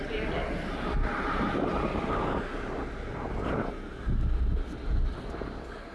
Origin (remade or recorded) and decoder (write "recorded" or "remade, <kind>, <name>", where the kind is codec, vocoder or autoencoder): recorded